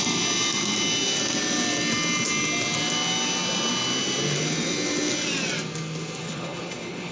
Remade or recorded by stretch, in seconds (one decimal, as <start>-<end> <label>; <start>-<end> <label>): 0.0-6.2 recorded; 6.2-7.1 remade